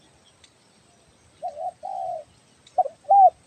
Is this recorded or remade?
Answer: recorded